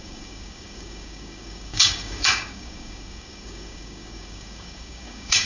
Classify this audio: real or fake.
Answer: fake